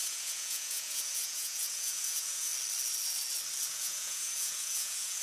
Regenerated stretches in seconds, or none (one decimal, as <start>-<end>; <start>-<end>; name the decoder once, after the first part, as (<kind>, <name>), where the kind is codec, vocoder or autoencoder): 0.0-2.5 (vocoder, Vocos); 3.7-5.2